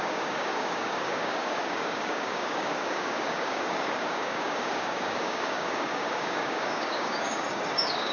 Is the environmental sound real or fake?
fake